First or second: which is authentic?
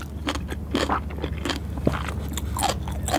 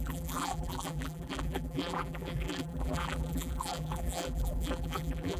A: first